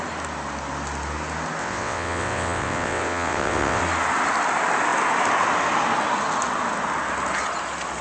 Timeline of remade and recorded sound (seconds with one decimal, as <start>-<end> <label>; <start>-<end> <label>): 0.0-1.6 recorded; 1.6-3.8 remade; 3.8-8.0 recorded